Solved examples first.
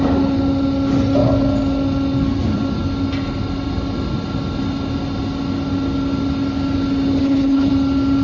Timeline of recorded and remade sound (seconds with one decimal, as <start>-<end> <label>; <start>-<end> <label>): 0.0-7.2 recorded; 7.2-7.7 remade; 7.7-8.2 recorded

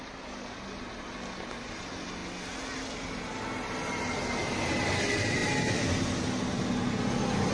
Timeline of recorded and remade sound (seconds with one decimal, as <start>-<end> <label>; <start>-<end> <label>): 0.0-7.5 recorded

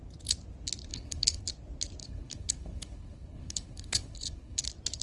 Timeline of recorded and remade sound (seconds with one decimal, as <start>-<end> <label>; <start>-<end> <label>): 0.0-0.9 recorded; 0.9-1.4 remade; 1.4-2.0 recorded; 2.0-4.6 remade; 4.6-5.0 recorded